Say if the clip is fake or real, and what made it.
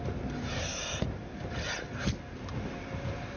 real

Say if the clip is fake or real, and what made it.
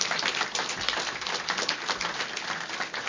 real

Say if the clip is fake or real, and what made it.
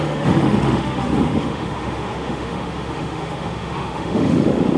fake, autoencoder, DAC-VAE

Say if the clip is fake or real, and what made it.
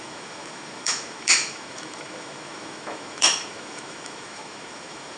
fake, autoencoder, DAC-VAE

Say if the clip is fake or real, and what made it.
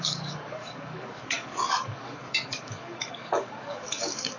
fake, codec, DAC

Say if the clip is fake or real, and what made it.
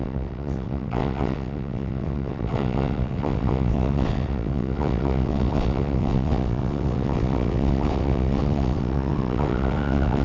fake, vocoder, WaveNeXt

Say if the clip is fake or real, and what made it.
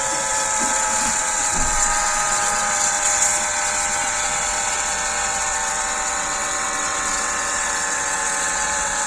fake, vocoder, WaveNeXt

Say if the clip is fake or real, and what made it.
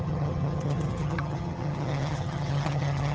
fake, vocoder, HiFi-GAN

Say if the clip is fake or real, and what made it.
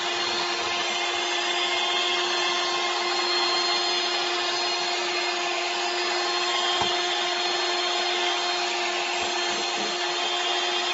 real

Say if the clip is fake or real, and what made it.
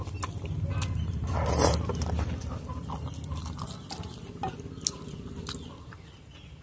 real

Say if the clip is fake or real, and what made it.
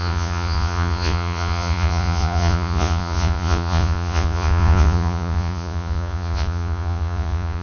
fake, vocoder, Vocos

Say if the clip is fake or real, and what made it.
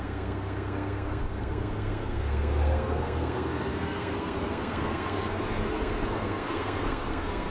fake, codec, SNAC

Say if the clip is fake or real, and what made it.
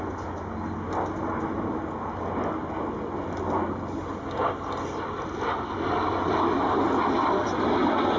real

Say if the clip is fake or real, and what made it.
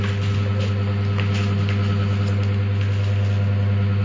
real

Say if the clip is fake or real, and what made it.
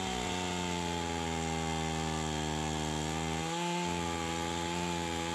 real